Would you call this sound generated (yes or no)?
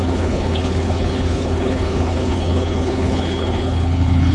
yes